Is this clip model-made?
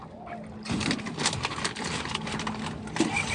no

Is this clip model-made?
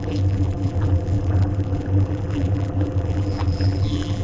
yes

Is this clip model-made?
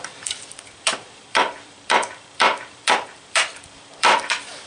yes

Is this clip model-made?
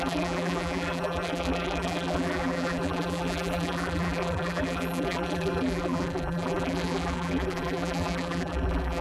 yes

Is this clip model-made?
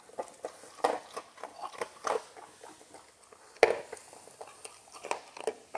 no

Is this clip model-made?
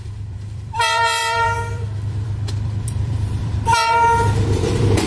yes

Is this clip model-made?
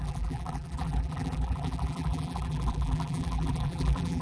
yes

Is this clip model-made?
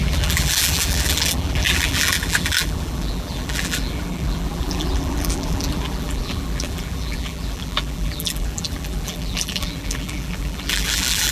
yes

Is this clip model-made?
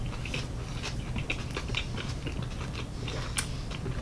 no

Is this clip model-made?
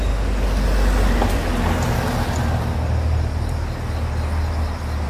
no